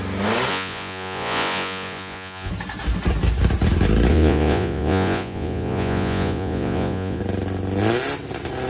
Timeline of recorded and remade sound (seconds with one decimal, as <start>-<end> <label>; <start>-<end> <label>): 0.0-0.5 recorded; 0.5-2.5 remade; 2.5-4.1 recorded; 4.1-7.2 remade; 7.2-8.7 recorded